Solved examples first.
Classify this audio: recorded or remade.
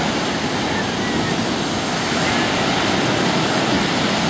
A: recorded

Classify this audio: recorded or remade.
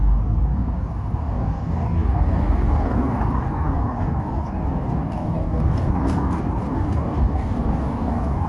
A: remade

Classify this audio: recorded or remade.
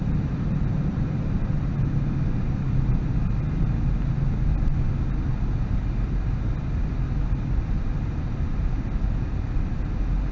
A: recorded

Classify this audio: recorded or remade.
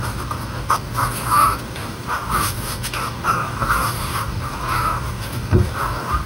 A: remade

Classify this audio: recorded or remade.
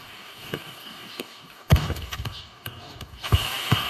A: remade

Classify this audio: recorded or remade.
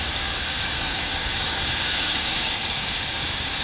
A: remade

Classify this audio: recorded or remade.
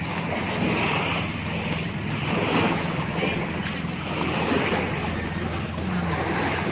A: recorded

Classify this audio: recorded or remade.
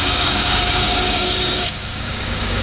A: remade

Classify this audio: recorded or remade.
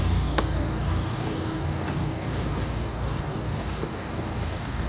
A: remade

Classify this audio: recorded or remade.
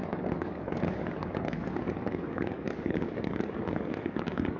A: remade